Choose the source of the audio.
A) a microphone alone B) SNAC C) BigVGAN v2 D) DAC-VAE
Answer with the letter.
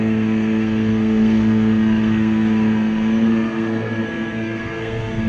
B